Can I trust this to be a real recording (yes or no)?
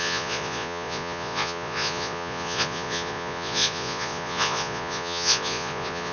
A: no